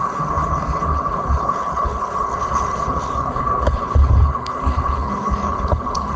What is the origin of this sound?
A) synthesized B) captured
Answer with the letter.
A